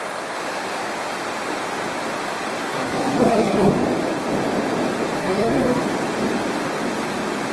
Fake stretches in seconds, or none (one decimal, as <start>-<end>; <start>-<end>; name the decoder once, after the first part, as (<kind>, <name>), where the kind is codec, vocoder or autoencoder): 2.6-3.7 (codec, SNAC); 5.2-5.8